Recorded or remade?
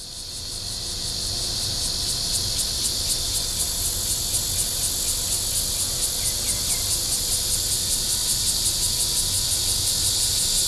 recorded